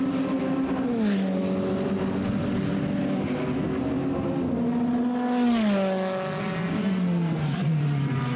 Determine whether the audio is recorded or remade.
recorded